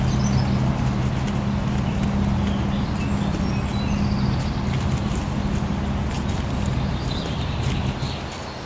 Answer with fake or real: real